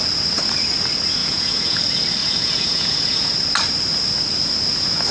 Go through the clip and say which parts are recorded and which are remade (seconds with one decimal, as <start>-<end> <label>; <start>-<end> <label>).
0.0-1.2 recorded; 1.2-1.8 remade; 1.8-2.2 recorded; 2.2-3.3 remade; 3.3-5.1 recorded